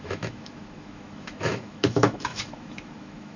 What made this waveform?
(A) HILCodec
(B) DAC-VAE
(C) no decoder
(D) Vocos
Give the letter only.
B